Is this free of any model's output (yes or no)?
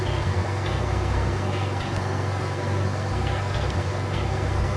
no